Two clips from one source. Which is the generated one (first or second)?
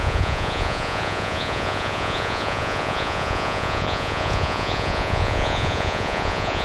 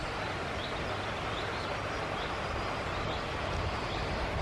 first